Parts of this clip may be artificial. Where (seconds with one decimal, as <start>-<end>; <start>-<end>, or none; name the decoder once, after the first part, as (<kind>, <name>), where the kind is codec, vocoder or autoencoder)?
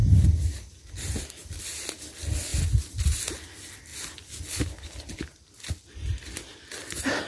none